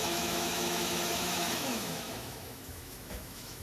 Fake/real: fake